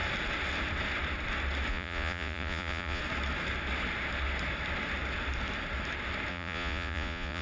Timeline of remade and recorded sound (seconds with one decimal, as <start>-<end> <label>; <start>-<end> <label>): 0.0-1.7 recorded; 1.7-3.0 remade; 3.0-6.3 recorded; 6.3-7.4 remade